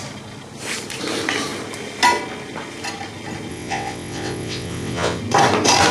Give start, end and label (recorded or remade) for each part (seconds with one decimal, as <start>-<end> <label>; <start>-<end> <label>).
0.0-3.5 recorded; 3.5-5.2 remade; 5.2-5.9 recorded